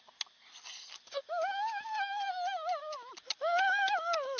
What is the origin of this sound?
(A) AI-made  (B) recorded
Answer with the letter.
B